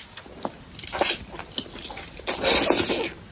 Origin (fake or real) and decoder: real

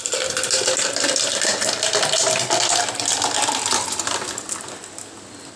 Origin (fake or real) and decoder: real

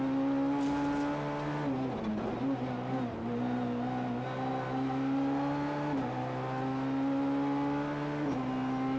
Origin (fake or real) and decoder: real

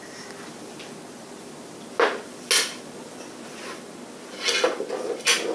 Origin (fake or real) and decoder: real